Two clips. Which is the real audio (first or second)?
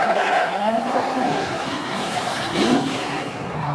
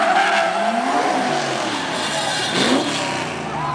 second